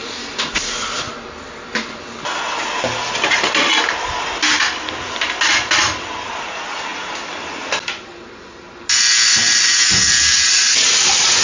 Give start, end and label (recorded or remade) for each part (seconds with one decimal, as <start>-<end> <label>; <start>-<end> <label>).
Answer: 0.0-11.4 recorded